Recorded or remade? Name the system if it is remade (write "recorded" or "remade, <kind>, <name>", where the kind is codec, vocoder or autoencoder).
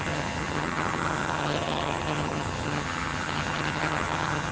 remade, vocoder, HiFi-GAN